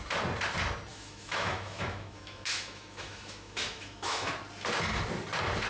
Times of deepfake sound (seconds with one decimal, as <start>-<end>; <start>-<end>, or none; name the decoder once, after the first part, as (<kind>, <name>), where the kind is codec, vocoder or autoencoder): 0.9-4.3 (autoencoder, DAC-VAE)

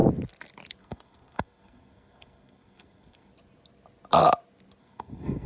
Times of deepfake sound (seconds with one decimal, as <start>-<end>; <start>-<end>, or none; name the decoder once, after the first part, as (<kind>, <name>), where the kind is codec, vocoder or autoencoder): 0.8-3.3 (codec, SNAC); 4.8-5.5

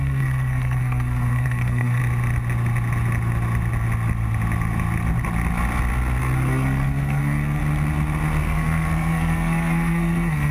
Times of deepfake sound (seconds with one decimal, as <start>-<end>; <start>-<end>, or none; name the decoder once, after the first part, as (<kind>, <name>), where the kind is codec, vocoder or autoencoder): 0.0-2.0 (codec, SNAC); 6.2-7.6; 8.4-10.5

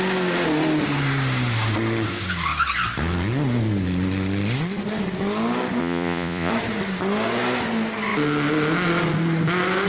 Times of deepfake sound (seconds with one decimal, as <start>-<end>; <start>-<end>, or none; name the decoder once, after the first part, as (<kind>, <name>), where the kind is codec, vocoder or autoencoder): 5.8-6.5 (vocoder, Vocos)

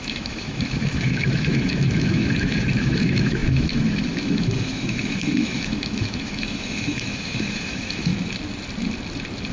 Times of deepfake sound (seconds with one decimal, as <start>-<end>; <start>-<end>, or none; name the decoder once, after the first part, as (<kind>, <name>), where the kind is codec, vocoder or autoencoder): 0.0-8.1 (autoencoder, DAC-VAE)

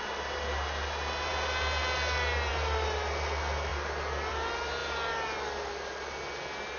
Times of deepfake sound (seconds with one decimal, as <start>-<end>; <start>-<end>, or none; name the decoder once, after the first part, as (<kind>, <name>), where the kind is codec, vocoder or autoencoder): none

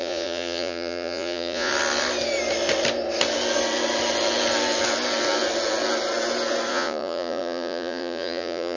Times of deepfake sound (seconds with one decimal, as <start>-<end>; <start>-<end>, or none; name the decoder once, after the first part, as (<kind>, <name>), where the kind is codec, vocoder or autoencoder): 0.0-1.7 (vocoder, Vocos); 6.7-8.8

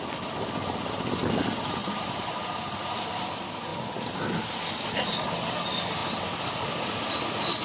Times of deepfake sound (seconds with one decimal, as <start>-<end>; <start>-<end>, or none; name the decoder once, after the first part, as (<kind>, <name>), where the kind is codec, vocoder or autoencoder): none